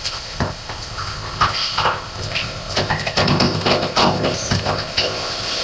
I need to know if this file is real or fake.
fake